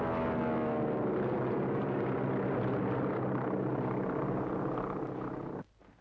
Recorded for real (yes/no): yes